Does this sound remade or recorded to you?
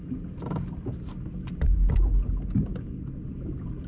recorded